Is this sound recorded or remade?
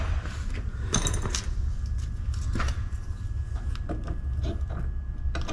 recorded